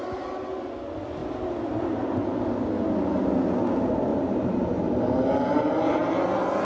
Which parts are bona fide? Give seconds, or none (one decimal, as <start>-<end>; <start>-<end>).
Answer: 0.0-1.2; 2.0-4.1; 4.8-5.5; 6.0-6.6